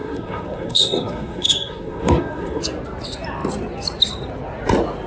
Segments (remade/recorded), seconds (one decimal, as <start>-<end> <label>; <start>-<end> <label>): 0.0-2.6 remade; 2.6-5.1 recorded